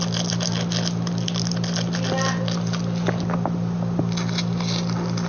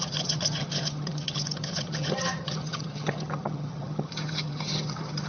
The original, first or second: first